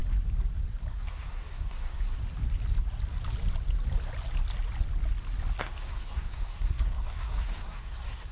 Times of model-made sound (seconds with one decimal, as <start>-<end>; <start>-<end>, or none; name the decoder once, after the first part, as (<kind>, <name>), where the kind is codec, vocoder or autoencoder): 0.9-2.2 (codec, SNAC); 5.5-8.3